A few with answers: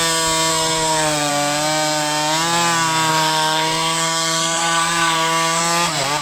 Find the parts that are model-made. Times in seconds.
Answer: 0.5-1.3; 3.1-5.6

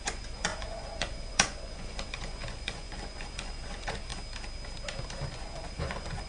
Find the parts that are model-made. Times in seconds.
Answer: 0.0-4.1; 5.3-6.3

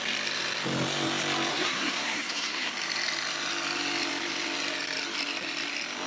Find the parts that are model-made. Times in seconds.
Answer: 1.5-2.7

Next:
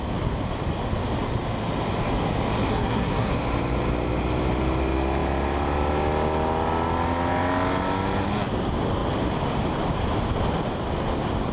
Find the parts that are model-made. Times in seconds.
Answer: 2.7-3.3

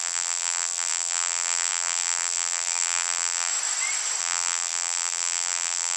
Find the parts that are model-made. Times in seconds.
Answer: 0.0-3.5; 4.2-6.0